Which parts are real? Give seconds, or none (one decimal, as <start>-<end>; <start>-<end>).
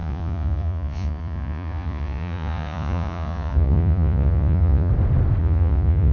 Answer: 4.9-5.4